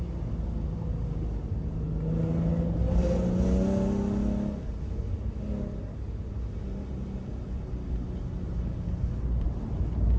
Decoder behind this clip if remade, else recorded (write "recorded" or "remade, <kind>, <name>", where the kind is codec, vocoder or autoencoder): recorded